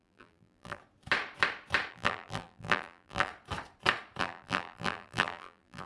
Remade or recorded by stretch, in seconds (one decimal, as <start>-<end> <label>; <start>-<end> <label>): 0.0-0.8 remade; 0.8-1.9 recorded; 1.9-3.3 remade; 3.3-4.2 recorded; 4.2-5.9 remade